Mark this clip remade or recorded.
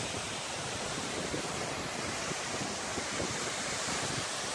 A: recorded